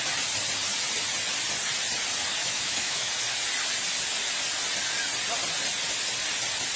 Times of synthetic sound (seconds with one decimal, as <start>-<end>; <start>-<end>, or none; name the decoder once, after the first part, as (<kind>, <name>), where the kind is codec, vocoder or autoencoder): 2.4-3.1 (autoencoder, DAC-VAE)